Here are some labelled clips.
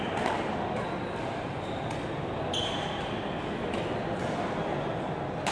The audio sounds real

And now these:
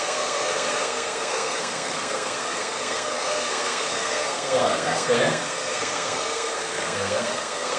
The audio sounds fake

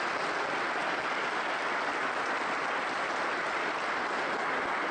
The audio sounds real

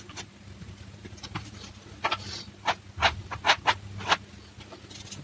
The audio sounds real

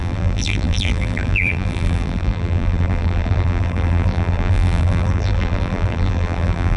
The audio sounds fake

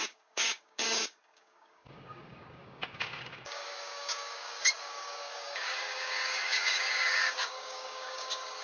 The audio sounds fake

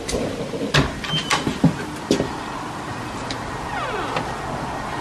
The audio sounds real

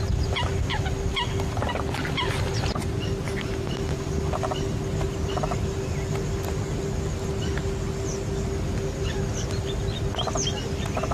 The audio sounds real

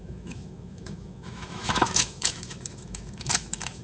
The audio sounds fake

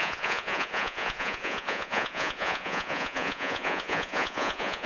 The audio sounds fake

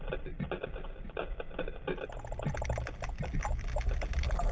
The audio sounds real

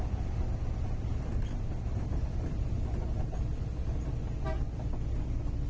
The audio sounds real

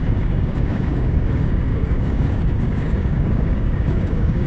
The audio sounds fake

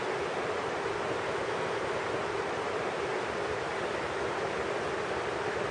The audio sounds real